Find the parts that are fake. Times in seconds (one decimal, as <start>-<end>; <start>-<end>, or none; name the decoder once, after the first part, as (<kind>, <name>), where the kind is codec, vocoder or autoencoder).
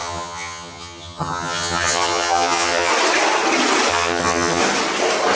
0.0-2.9 (vocoder, HiFi-GAN); 3.9-4.6